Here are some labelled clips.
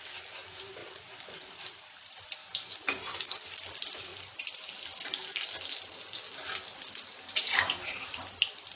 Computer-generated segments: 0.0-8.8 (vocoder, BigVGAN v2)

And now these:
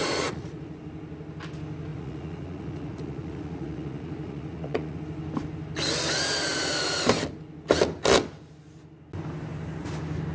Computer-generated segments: 0.0-0.8 (vocoder, Vocos); 1.9-5.0